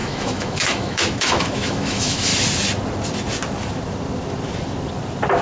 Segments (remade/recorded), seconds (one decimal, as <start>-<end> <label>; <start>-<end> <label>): 0.0-2.3 remade; 2.3-5.4 recorded